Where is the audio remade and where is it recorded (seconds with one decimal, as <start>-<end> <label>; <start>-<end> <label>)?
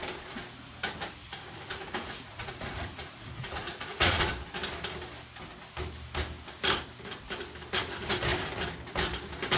0.0-1.2 recorded; 1.2-4.3 remade; 4.3-9.6 recorded